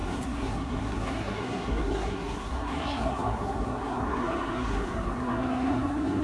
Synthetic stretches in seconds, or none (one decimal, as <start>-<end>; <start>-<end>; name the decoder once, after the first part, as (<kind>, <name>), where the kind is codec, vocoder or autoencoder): 0.0-6.2 (codec, SNAC)